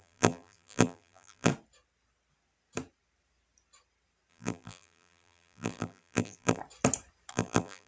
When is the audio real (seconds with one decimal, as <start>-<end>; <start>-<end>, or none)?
1.5-4.3; 6.6-7.3